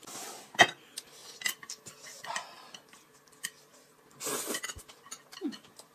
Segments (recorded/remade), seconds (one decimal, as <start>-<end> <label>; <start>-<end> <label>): 0.0-5.9 recorded